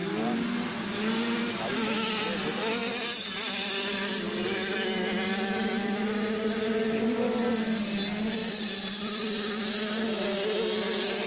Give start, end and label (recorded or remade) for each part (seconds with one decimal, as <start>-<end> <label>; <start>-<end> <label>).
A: 0.0-1.4 recorded; 1.4-2.1 remade; 2.1-11.3 recorded